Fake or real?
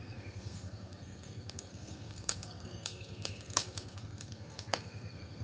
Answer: fake